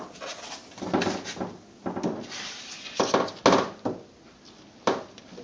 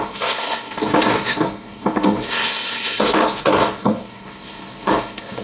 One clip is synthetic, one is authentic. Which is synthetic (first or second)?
second